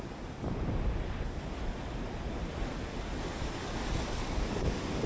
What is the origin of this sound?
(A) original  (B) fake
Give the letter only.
A